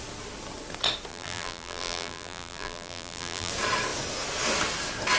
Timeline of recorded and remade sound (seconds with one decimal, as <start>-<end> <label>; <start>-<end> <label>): 0.0-1.1 recorded; 1.1-3.5 remade; 3.5-5.2 recorded